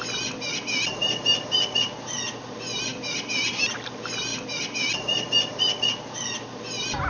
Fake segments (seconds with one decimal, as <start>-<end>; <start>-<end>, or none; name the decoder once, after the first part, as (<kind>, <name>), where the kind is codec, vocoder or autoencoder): none